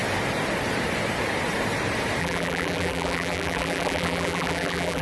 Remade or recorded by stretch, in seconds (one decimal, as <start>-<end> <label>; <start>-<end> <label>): 0.0-2.2 recorded; 2.2-5.0 remade